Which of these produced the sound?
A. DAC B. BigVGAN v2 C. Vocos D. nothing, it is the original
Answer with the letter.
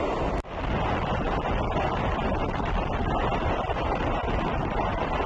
D